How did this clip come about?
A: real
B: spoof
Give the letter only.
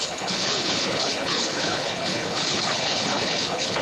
B